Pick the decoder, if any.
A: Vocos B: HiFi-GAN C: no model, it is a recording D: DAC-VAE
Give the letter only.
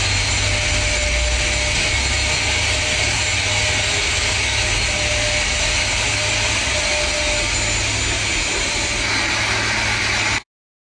C